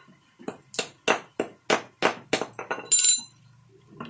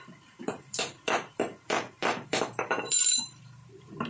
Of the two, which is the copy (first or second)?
second